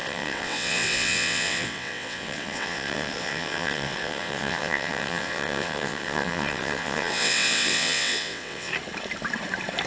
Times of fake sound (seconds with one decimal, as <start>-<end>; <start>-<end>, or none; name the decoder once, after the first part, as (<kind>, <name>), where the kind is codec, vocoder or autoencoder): 0.0-8.7 (vocoder, WaveNeXt)